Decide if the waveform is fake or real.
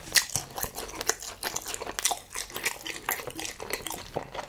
real